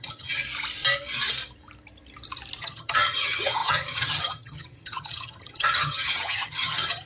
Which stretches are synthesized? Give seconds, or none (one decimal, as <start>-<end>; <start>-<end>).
0.0-0.4; 2.6-7.1